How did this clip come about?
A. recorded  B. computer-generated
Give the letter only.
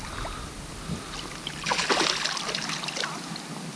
A